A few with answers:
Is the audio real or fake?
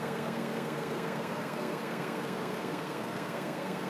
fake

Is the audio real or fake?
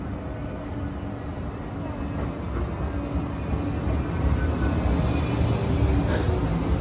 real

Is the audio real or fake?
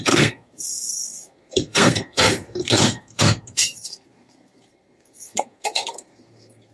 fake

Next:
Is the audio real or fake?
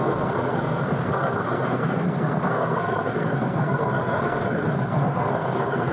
fake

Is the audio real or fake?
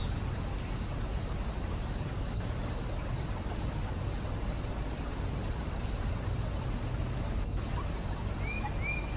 real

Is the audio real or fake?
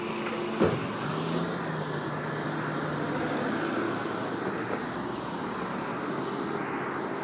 real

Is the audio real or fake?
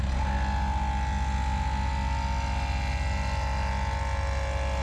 real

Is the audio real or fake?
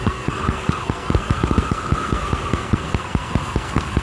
fake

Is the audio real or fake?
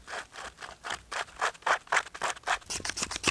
real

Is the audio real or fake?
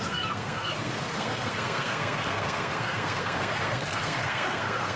fake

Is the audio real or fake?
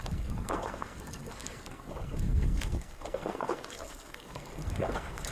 fake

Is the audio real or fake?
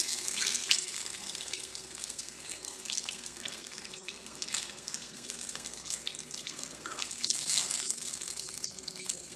fake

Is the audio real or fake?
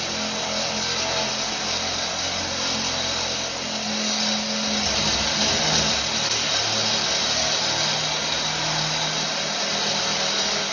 real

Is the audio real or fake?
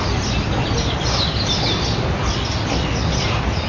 real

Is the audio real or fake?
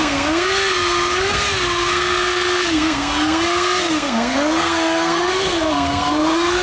fake